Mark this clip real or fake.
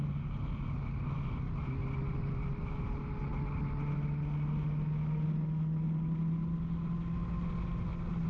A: real